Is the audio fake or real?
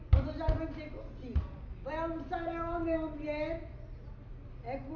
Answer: real